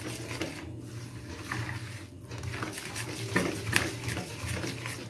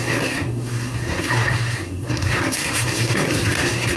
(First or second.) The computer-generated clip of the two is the second